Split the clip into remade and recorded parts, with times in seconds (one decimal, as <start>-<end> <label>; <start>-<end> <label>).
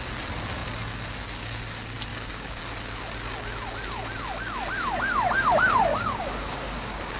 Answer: 0.0-2.1 recorded; 2.1-2.6 remade; 2.6-5.9 recorded; 5.9-7.2 remade